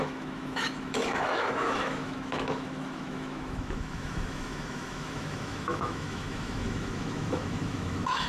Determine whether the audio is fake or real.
fake